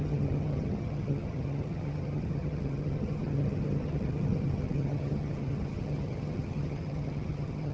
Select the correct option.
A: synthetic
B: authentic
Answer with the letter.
A